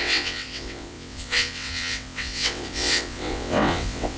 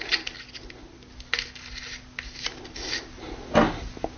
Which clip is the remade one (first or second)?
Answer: first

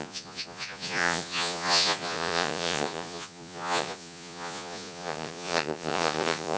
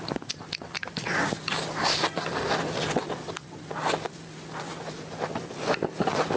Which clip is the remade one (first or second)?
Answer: first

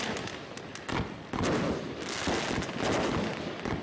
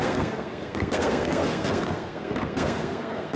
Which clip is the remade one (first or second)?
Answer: second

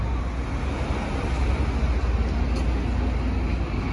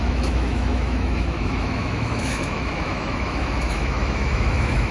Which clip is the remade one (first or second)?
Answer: second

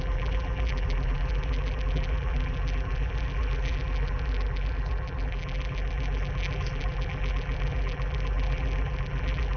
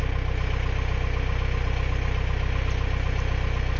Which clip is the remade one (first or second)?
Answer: first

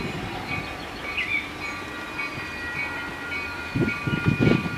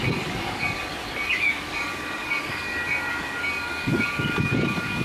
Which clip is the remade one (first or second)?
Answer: second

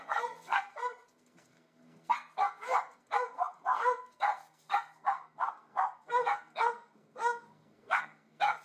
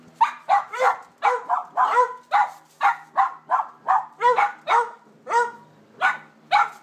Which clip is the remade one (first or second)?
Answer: first